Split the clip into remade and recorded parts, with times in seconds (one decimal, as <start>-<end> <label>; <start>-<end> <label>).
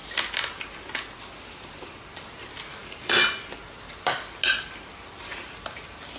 0.0-2.8 recorded; 2.8-3.6 remade; 3.6-6.2 recorded